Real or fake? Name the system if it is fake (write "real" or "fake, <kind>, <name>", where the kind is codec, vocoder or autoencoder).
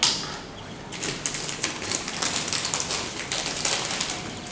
real